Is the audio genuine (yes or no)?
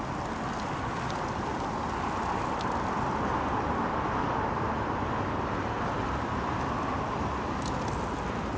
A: yes